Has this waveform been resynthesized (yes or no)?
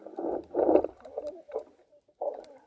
no